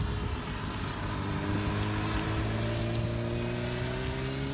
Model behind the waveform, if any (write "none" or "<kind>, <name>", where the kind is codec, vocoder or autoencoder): none